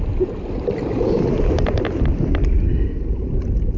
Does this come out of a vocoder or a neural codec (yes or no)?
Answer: no